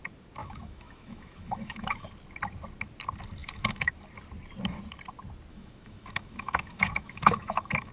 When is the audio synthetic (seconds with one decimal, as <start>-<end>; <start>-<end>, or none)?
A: 0.4-2.1; 3.4-3.9; 5.5-7.9